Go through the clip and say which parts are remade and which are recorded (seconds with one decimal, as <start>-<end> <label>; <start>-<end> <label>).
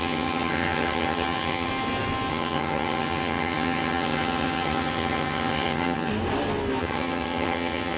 0.0-1.7 remade; 1.7-2.3 recorded; 2.3-6.1 remade; 6.1-6.8 recorded; 6.8-8.0 remade